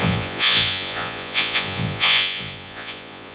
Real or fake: fake